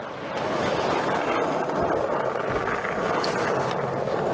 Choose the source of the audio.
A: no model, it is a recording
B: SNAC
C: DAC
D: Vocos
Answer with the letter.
A